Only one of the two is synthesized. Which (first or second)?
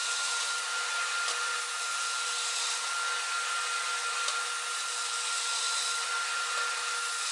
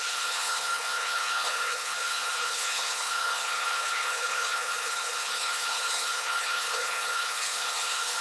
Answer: second